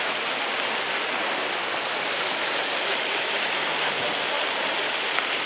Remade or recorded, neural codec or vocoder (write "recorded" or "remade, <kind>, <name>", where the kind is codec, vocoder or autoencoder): recorded